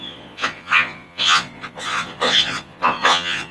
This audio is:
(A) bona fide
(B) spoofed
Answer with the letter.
B